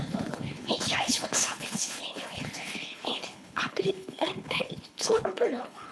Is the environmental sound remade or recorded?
remade